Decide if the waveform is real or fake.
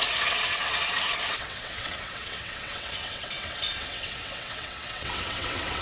fake